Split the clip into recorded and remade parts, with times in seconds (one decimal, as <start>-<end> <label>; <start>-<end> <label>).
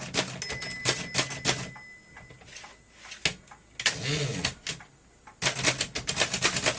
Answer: 0.0-6.8 recorded